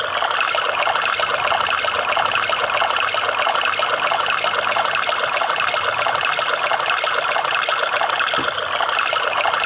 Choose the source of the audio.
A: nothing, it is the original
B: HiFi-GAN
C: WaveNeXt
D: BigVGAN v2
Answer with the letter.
A